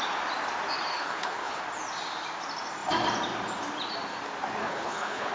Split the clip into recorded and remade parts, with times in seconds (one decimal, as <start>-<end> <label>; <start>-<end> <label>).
0.0-0.9 recorded; 0.9-1.6 remade; 1.6-4.6 recorded; 4.6-5.3 remade